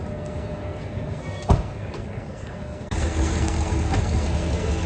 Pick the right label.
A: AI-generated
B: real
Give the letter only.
A